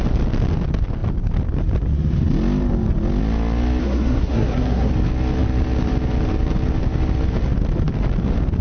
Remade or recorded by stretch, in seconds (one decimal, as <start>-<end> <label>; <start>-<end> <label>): 0.0-3.8 recorded; 3.8-4.9 remade; 4.9-8.6 recorded